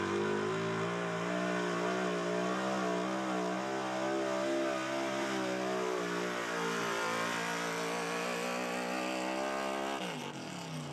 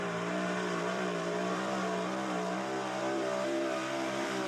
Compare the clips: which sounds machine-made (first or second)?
second